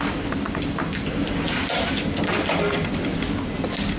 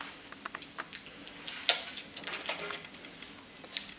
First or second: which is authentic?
second